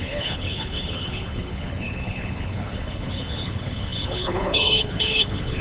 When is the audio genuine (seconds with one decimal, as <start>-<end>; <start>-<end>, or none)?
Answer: none